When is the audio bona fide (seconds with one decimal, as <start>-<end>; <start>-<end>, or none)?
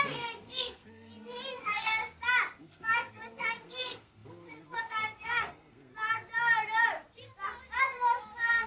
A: 2.0-2.6; 5.9-7.8